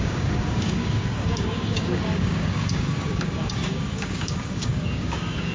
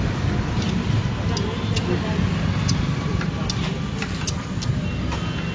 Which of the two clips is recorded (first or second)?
second